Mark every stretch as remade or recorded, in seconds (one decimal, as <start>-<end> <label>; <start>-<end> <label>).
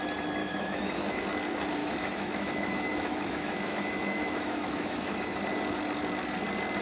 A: 0.0-0.4 recorded; 0.4-1.2 remade; 1.2-1.8 recorded; 1.8-5.4 remade; 5.4-6.8 recorded